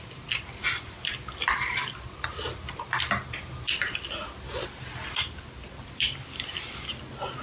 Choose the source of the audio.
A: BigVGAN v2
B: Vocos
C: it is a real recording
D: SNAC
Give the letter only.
C